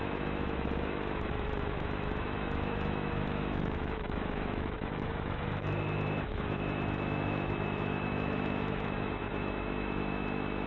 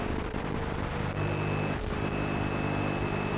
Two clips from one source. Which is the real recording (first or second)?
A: second